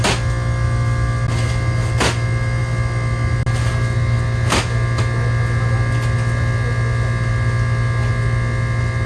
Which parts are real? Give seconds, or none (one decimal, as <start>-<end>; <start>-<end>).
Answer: 0.0-9.1